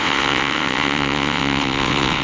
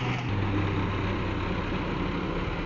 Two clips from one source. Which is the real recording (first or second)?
second